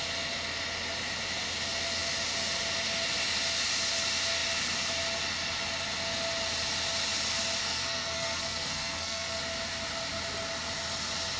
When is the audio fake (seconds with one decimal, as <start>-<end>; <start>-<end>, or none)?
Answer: 7.6-9.4